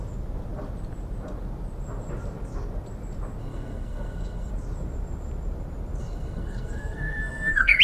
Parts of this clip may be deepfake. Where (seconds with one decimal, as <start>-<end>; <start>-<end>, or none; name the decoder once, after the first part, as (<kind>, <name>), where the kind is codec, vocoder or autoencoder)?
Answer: 3.4-4.5 (codec, SNAC); 6.0-7.8

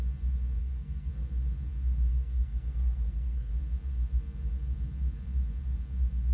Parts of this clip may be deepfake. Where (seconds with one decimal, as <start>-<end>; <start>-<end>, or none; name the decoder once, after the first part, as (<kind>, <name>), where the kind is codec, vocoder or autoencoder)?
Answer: 0.6-1.1 (codec, SNAC); 2.1-3.5

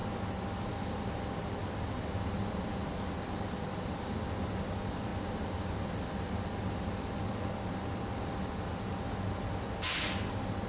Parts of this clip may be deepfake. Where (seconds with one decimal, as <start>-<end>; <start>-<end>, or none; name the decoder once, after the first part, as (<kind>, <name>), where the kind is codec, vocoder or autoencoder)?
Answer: none

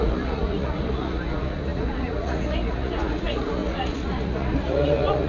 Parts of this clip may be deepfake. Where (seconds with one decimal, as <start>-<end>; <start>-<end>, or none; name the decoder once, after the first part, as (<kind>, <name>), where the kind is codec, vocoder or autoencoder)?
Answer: 0.0-5.3 (vocoder, Vocos)

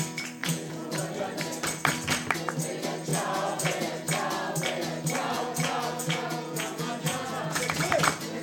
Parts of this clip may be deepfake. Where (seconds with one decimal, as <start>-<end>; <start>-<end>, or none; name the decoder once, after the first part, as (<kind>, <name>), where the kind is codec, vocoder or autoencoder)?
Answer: 0.4-1.0 (vocoder, Vocos); 3.1-3.8; 5.2-7.9

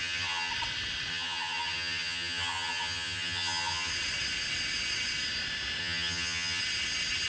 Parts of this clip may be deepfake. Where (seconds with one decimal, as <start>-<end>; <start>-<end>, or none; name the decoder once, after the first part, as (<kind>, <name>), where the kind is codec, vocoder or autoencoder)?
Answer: 0.0-0.5 (vocoder, HiFi-GAN); 1.1-3.9; 5.8-6.6

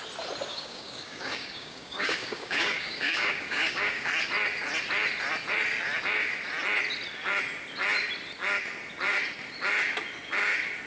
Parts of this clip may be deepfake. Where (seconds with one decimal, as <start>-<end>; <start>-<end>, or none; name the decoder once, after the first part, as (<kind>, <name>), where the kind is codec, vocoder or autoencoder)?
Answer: 0.5-4.1 (codec, DAC)